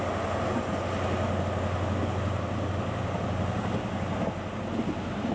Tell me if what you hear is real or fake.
real